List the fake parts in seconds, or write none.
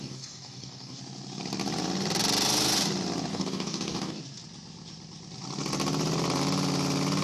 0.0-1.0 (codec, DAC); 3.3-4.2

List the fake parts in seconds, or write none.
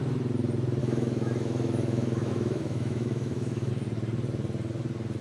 0.8-3.7 (autoencoder, DAC-VAE)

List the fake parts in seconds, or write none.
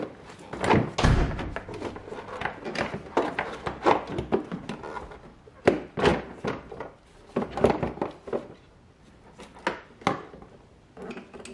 none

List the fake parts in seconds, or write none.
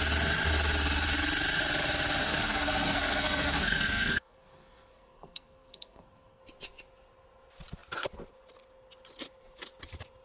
2.2-6.4 (codec, SNAC)